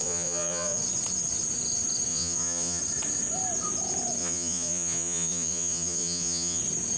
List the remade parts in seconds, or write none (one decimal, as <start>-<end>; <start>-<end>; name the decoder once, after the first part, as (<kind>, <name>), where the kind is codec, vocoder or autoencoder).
0.0-0.8 (vocoder, Vocos); 2.1-2.8; 4.2-6.6